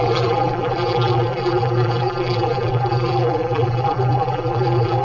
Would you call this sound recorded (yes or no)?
no